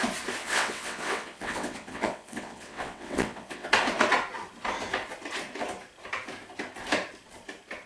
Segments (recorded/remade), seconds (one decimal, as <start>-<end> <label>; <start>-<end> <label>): 0.0-0.4 recorded; 0.4-3.7 remade; 3.7-7.9 recorded